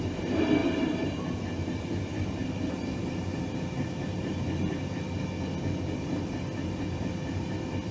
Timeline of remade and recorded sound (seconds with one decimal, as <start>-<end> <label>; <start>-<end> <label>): 0.0-0.6 recorded; 0.6-1.3 remade; 1.3-7.9 recorded